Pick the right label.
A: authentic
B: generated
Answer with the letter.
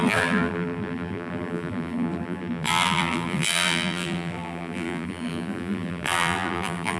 B